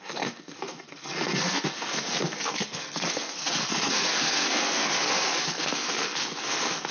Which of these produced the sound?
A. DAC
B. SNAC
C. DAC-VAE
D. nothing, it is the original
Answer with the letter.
B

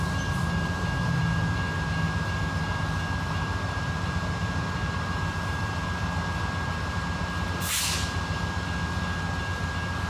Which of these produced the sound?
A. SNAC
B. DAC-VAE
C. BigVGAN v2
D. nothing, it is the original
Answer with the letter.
D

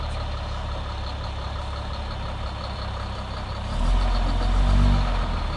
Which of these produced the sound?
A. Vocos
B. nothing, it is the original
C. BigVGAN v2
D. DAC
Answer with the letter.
B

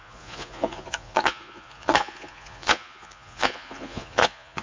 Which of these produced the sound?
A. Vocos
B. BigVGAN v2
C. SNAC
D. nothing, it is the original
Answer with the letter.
A